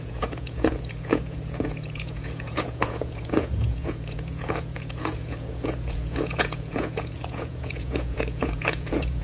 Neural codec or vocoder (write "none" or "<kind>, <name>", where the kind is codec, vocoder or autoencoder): vocoder, Vocos